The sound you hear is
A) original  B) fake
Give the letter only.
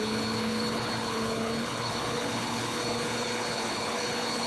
B